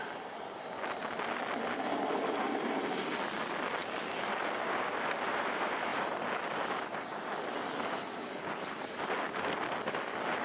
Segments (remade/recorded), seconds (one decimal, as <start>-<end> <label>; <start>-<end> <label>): 0.0-10.4 recorded